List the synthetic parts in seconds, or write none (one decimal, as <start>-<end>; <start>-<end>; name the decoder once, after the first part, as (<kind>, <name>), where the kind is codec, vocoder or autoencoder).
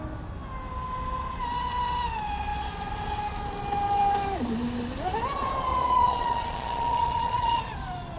5.7-7.6 (vocoder, Vocos)